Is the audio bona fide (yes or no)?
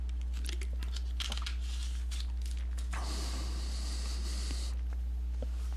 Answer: yes